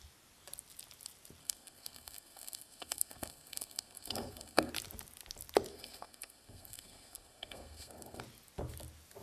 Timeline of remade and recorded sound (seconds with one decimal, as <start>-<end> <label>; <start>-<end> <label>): 0.0-1.4 recorded; 1.4-4.7 remade; 4.7-5.7 recorded; 5.7-8.2 remade; 8.2-9.2 recorded

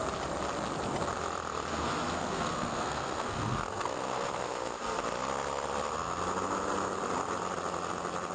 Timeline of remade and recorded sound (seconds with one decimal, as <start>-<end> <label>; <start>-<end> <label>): 0.0-1.7 recorded; 1.7-5.0 remade; 5.0-8.3 recorded

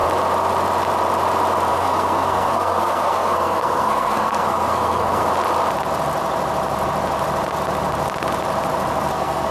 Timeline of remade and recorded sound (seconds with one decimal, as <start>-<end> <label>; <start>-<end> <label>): 0.0-1.7 recorded; 1.7-5.3 remade; 5.3-9.1 recorded; 9.1-9.5 remade

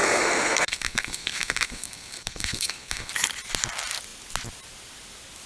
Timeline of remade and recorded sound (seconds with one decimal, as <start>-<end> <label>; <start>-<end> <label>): 0.0-3.1 remade; 3.1-5.5 recorded